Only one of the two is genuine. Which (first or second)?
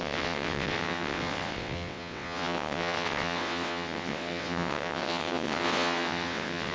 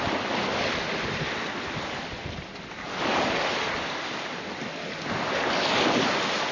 second